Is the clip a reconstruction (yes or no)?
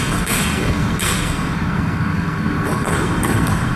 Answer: yes